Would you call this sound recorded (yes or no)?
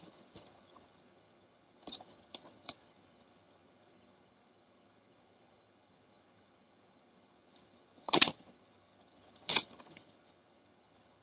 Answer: no